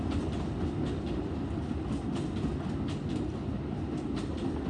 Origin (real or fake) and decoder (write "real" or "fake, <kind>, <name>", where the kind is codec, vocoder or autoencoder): real